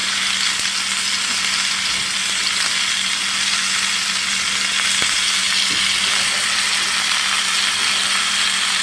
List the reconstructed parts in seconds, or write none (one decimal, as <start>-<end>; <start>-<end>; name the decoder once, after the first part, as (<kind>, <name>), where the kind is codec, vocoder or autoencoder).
none